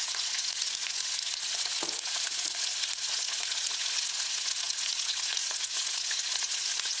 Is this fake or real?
fake